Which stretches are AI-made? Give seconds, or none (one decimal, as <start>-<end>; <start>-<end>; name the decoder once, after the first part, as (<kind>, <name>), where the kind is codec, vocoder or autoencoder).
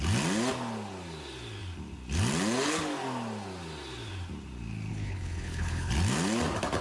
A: 4.9-5.9 (codec, HILCodec)